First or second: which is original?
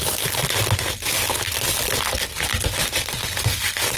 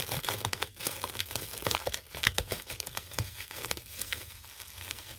first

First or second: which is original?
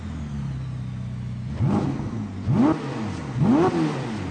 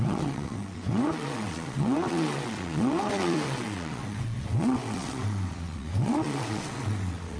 first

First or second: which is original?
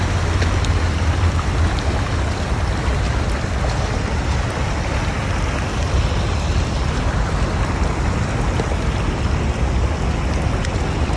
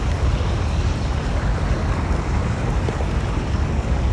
first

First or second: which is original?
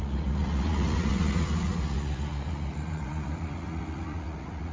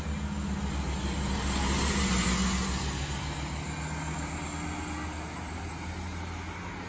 second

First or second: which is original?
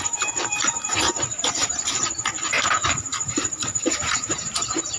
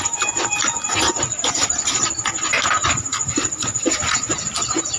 second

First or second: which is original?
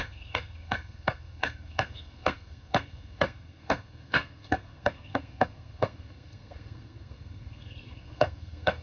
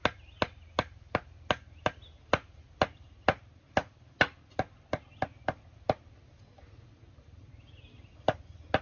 second